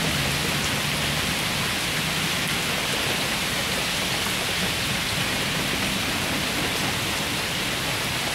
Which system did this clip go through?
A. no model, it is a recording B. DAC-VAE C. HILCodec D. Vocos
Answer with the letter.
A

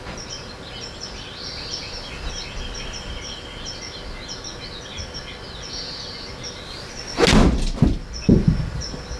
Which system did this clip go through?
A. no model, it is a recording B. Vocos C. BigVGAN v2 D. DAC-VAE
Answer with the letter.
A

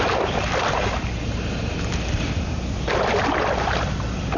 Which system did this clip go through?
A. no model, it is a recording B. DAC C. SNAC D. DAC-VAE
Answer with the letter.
A